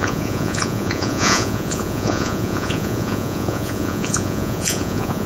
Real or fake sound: fake